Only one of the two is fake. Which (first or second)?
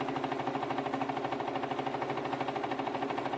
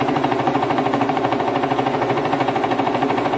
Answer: second